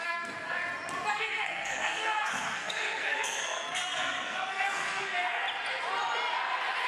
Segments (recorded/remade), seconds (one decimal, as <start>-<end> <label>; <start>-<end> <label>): 0.0-0.6 remade; 0.6-1.1 recorded; 1.1-5.4 remade; 5.4-6.9 recorded